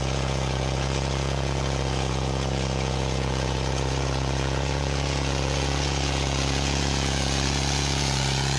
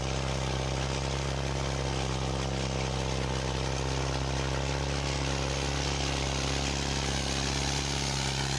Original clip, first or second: second